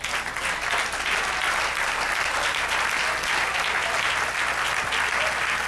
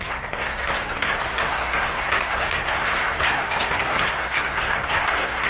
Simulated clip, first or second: second